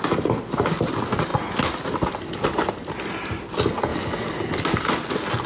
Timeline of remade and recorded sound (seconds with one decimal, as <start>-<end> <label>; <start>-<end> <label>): 0.0-5.5 recorded